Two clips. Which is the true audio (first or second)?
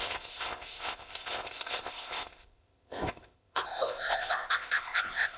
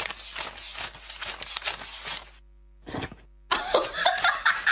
second